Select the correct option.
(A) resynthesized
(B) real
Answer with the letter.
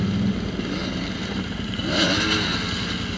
B